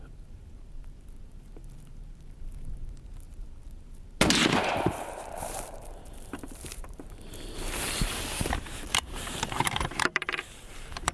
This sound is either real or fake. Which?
fake